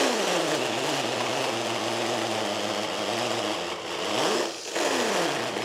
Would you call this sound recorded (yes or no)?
yes